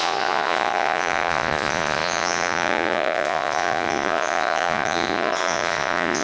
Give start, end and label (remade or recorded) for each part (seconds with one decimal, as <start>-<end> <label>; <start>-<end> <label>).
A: 0.0-6.2 remade